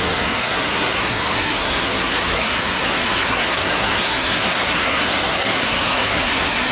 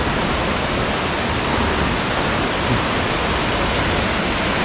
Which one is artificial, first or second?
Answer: first